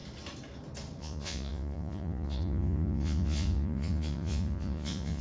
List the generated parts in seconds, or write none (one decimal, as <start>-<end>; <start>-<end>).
1.0-5.2